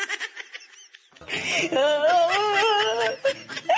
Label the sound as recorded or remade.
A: recorded